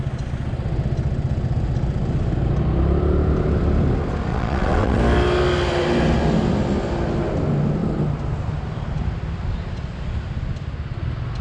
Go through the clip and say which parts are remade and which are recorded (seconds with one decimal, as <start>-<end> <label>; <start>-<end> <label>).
0.0-4.3 recorded; 4.3-5.0 remade; 5.0-11.4 recorded